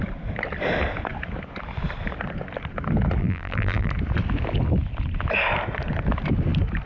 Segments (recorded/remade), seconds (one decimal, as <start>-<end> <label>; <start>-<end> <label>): 0.0-3.2 recorded; 3.2-3.9 remade; 3.9-6.9 recorded